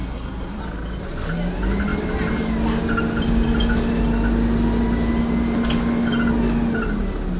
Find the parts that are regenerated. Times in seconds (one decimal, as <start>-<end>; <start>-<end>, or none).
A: 0.0-0.6